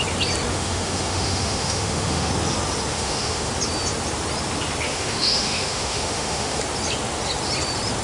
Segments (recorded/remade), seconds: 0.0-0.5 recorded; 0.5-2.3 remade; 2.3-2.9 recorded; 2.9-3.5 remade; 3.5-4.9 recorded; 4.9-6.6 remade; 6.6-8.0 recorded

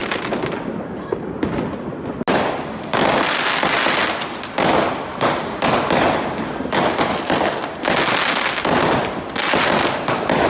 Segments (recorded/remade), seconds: 0.0-10.5 recorded

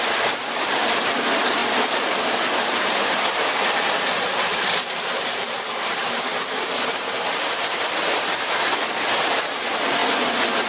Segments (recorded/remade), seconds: 0.0-1.6 remade; 1.6-3.3 recorded; 3.3-6.3 remade; 6.3-7.7 recorded; 7.7-10.0 remade; 10.0-10.7 recorded

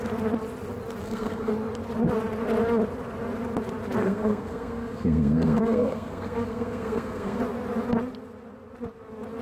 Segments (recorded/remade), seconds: 0.0-1.0 recorded; 1.0-1.5 remade; 1.5-4.0 recorded; 4.0-7.4 remade; 7.4-9.4 recorded

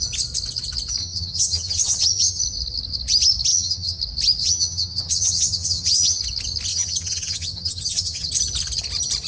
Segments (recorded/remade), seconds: 0.0-1.0 recorded; 1.0-2.4 remade; 2.4-3.5 recorded; 3.5-4.0 remade; 4.0-4.4 recorded; 4.4-6.2 remade; 6.2-6.7 recorded; 6.7-8.3 remade; 8.3-9.3 recorded

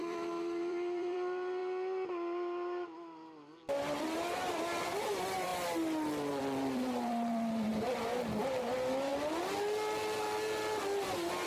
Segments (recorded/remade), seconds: 0.0-1.6 remade; 1.6-4.0 recorded; 4.0-5.5 remade; 5.5-6.4 recorded; 6.4-9.1 remade; 9.1-11.1 recorded; 11.1-11.5 remade